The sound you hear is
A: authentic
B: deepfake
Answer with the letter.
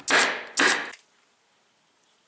A